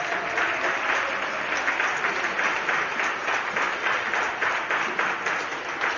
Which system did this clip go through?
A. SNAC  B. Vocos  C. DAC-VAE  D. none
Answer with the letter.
D